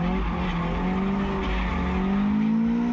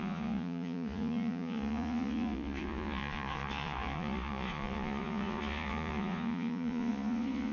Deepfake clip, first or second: second